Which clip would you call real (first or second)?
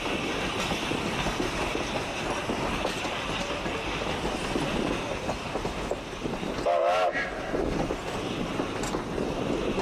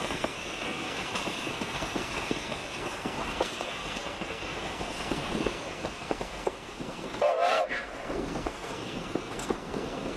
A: first